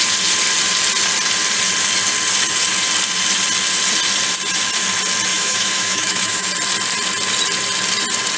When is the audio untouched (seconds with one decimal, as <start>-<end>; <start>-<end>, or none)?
0.0-5.3; 6.5-8.4